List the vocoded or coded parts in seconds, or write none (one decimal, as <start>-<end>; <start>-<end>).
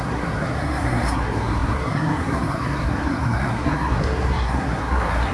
0.0-5.3